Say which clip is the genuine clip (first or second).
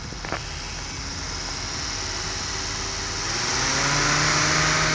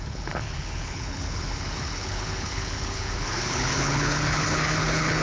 first